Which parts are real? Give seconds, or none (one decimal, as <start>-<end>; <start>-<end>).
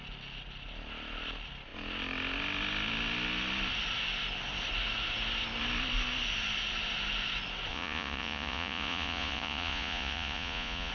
0.0-7.7